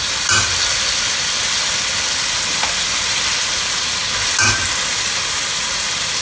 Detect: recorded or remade recorded